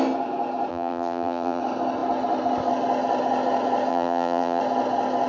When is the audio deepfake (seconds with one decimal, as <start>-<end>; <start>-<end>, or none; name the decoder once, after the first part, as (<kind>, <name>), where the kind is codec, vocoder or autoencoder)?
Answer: 0.7-1.6 (vocoder, BigVGAN v2); 3.9-4.6